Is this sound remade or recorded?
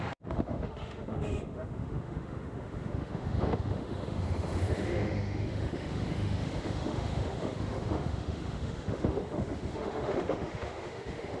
remade